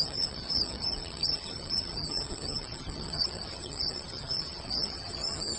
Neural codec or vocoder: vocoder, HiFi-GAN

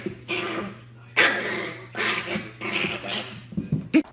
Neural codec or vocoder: none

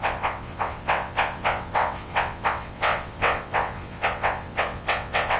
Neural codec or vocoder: vocoder, WaveNeXt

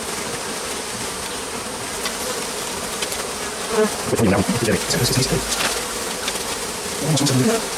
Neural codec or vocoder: none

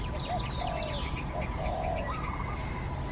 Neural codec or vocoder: none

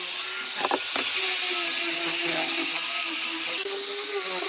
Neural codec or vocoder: none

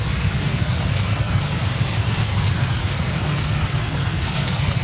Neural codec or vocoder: codec, SNAC